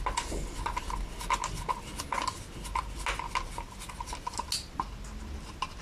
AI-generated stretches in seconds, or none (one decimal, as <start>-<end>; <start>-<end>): none

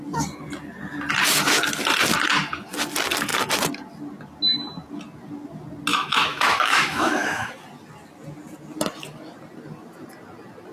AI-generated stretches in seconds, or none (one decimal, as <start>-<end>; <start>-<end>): 5.9-7.5

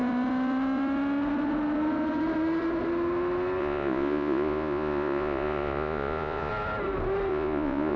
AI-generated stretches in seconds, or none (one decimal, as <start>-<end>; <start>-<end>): 3.6-6.5; 7.3-8.0

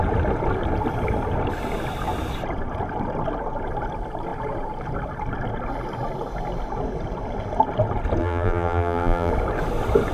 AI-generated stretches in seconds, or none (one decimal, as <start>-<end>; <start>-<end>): 8.2-9.3

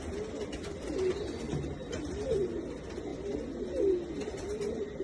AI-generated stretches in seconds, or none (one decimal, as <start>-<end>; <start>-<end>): none

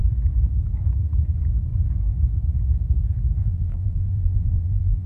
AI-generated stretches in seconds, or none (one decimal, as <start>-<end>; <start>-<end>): 3.4-5.1